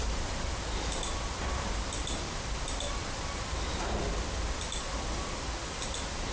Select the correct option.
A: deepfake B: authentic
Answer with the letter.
B